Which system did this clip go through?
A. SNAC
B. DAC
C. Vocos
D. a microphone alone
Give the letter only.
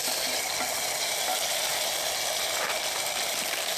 D